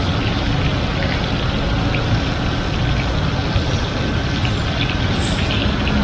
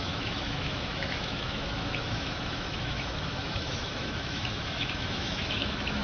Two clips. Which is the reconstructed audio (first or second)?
second